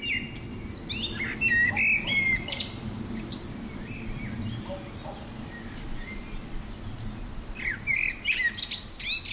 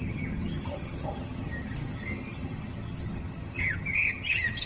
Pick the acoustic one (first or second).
first